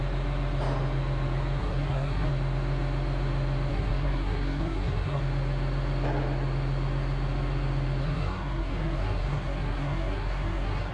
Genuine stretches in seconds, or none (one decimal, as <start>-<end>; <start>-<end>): 0.0-1.6; 2.3-3.7; 5.2-8.0